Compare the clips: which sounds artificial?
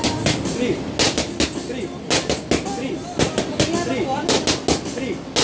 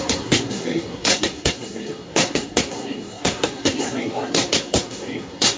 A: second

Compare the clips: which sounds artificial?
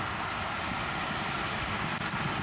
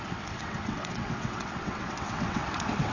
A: second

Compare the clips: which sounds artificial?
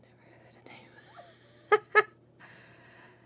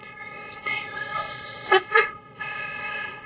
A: second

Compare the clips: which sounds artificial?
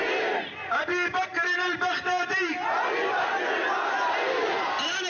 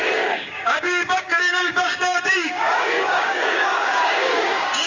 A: second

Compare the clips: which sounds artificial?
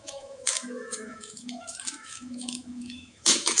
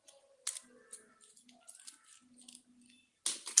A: first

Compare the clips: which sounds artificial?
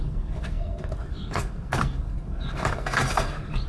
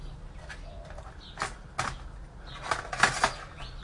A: first